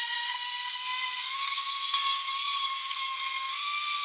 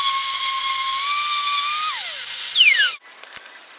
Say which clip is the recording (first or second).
second